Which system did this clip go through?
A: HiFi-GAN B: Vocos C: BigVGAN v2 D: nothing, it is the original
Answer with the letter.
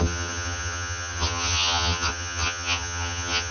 A